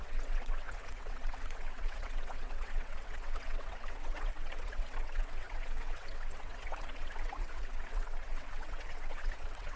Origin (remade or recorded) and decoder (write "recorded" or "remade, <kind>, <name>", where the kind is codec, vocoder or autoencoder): remade, vocoder, WaveNeXt